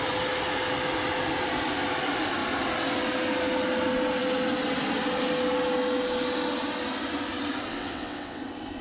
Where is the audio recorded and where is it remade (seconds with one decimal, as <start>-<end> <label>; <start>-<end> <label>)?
0.0-7.7 recorded; 7.7-8.4 remade; 8.4-8.8 recorded